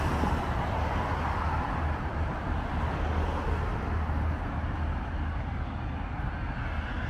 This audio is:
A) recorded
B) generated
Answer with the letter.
A